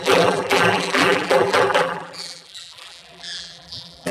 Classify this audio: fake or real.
fake